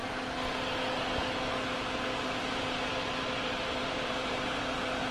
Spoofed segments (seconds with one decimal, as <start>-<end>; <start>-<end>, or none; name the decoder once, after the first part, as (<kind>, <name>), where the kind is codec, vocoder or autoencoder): 2.9-4.3 (vocoder, BigVGAN v2)